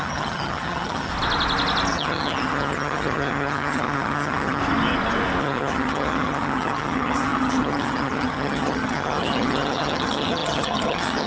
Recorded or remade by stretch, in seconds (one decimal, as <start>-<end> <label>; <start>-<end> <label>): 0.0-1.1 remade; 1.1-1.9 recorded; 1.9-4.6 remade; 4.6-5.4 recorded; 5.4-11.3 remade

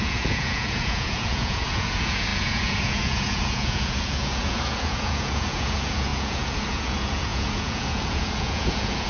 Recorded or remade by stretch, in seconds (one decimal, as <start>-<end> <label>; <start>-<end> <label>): 0.0-9.1 remade

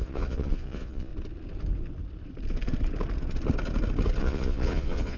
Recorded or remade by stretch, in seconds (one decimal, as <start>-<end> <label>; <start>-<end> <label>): 0.0-1.1 remade; 1.1-4.2 recorded; 4.2-5.2 remade

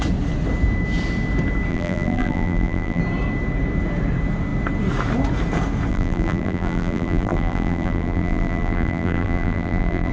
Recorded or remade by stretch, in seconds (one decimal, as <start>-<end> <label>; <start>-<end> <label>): 0.0-1.7 recorded; 1.7-3.0 remade; 3.0-5.9 recorded; 5.9-10.1 remade

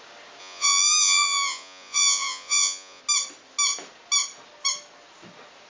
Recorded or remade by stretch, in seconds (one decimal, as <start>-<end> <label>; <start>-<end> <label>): 0.0-0.4 recorded; 0.4-3.0 remade; 3.0-5.7 recorded